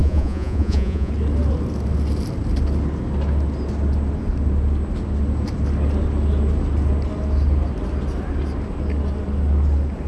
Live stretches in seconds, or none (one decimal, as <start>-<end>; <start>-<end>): 1.1-10.1